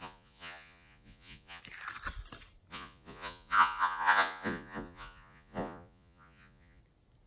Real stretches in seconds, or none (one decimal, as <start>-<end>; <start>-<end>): 1.6-2.7; 6.8-7.3